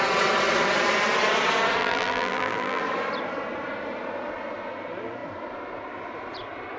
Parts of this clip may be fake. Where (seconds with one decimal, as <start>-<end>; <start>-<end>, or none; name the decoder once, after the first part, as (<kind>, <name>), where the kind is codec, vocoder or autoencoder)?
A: 1.8-2.8 (vocoder, BigVGAN v2)